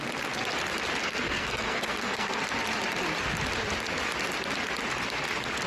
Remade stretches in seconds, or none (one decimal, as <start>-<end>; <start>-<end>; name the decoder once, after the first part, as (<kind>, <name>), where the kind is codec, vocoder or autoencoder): 1.0-2.4 (codec, SNAC)